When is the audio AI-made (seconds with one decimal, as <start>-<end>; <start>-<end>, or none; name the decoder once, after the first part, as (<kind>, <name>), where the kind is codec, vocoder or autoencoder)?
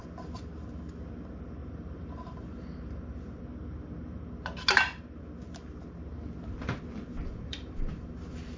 1.6-3.4 (vocoder, BigVGAN v2); 7.1-8.6